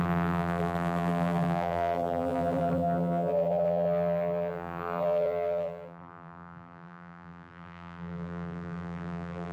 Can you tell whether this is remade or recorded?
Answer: remade